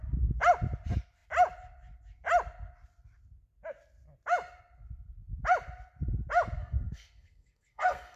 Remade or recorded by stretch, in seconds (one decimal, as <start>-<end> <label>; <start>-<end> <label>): 0.0-6.6 recorded; 6.6-8.2 remade